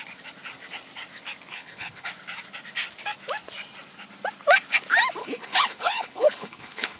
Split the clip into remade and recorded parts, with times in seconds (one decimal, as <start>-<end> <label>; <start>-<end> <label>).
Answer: 0.0-1.5 recorded; 1.5-2.1 remade; 2.1-5.2 recorded; 5.2-7.0 remade